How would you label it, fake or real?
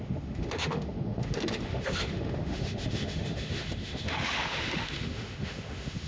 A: fake